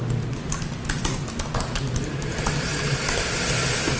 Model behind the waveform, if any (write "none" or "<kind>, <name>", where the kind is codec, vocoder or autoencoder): none